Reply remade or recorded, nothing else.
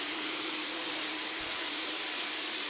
remade